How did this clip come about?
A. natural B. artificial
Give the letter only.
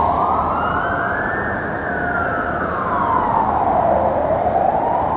A